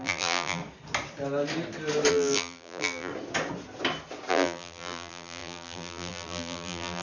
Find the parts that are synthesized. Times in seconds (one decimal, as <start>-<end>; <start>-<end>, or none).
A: 0.0-0.6; 2.1-3.1; 4.3-7.0

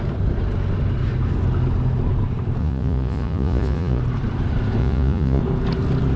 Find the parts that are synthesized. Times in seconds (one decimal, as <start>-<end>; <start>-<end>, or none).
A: 2.6-4.0; 4.8-5.4